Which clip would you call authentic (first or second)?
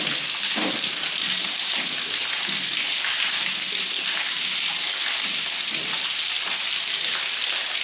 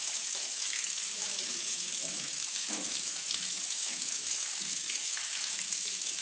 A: first